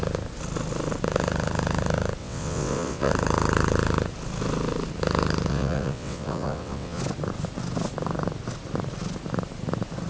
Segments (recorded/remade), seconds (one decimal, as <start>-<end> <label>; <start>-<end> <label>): 0.0-2.2 recorded; 2.2-3.1 remade; 3.1-5.5 recorded; 5.5-7.0 remade; 7.0-10.1 recorded